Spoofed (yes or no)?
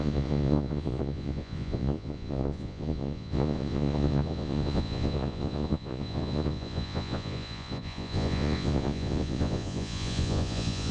yes